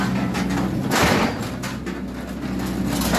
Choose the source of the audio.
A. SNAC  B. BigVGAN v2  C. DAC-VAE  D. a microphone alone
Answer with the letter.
D